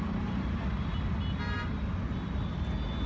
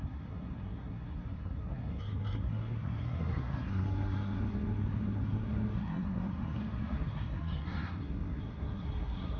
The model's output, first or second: second